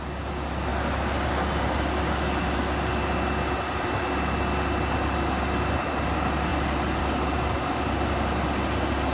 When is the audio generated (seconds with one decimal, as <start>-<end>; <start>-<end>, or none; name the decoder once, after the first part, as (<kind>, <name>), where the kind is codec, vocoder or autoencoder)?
none